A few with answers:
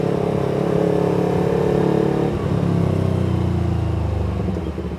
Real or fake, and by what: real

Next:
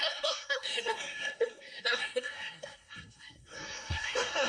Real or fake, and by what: fake, codec, SNAC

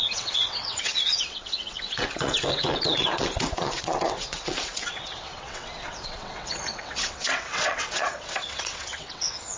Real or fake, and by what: fake, vocoder, WaveNeXt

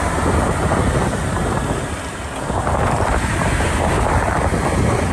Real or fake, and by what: real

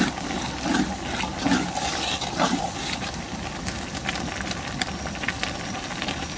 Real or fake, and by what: real